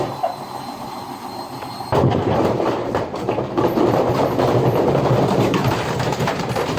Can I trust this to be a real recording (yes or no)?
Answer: no